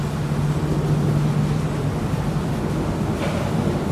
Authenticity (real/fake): real